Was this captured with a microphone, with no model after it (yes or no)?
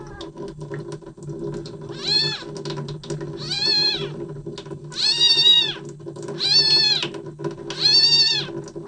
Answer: yes